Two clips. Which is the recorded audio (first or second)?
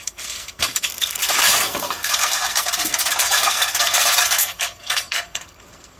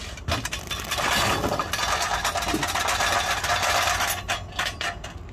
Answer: second